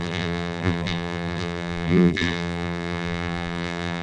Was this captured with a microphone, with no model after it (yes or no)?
no